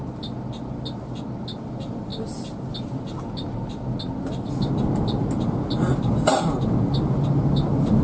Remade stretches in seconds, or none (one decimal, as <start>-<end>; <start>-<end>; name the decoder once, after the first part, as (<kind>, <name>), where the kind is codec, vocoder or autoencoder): none